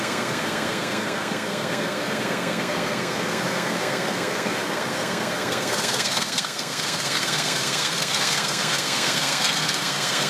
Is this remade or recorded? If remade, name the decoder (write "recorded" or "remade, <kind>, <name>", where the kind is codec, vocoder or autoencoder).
remade, codec, SNAC